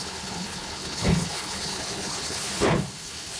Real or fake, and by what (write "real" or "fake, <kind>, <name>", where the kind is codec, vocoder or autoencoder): fake, codec, HILCodec